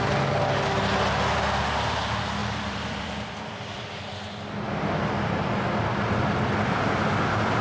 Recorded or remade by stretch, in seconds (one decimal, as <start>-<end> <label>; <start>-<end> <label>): 0.0-2.4 recorded; 2.4-4.1 remade; 4.1-7.6 recorded